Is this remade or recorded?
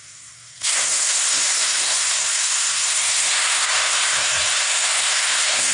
remade